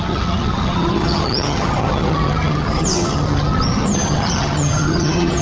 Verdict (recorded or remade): remade